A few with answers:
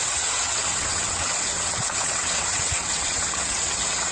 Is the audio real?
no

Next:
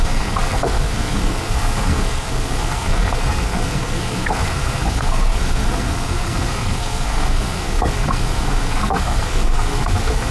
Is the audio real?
no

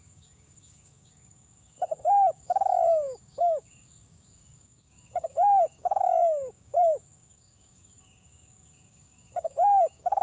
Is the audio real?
no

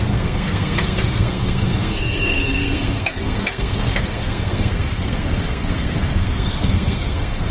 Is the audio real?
no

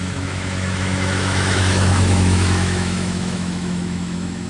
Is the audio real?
no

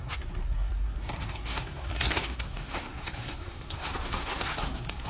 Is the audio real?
no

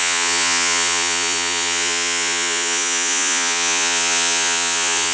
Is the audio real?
no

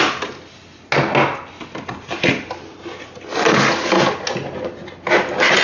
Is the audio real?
yes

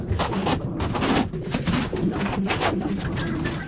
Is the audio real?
yes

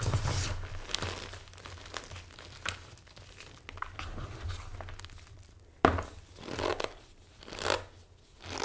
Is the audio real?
yes